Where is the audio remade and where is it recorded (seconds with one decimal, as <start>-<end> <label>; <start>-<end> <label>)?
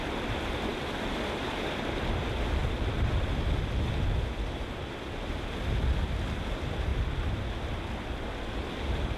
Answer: 0.0-9.2 recorded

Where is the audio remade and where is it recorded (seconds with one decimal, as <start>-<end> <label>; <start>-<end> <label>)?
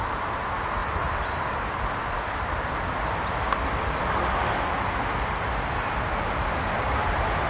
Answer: 0.0-0.8 recorded; 0.8-4.5 remade; 4.5-7.5 recorded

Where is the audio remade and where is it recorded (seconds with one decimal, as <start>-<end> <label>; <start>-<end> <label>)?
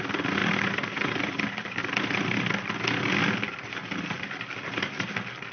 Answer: 0.0-5.5 recorded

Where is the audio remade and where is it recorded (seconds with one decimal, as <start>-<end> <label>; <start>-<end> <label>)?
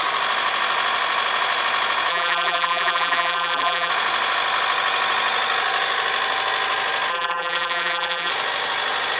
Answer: 0.0-2.1 recorded; 2.1-3.9 remade; 3.9-7.1 recorded; 7.1-8.3 remade; 8.3-9.2 recorded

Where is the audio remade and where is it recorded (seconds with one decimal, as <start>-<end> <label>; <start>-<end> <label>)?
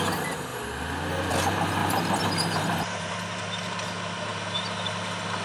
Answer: 0.0-1.8 recorded; 1.8-3.1 remade; 3.1-5.4 recorded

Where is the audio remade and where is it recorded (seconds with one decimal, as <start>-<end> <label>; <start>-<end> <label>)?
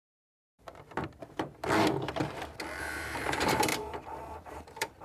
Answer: 0.0-1.6 remade; 1.6-2.8 recorded; 2.8-5.0 remade